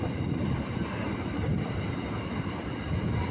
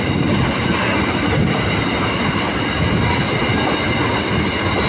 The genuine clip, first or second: second